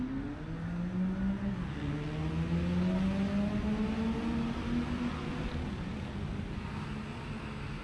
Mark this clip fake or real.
real